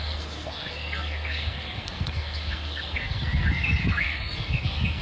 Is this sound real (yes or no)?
no